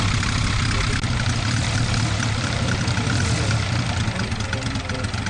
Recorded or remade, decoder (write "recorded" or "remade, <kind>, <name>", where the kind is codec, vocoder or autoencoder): recorded